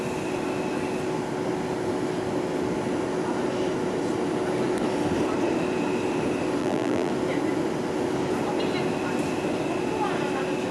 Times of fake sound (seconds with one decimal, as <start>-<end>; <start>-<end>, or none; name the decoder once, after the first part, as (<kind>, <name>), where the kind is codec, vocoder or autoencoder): 6.6-7.1 (vocoder, BigVGAN v2)